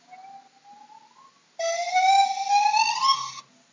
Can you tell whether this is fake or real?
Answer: real